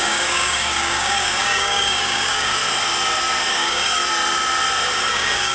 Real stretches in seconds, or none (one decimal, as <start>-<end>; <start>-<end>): 2.6-3.5; 4.0-5.1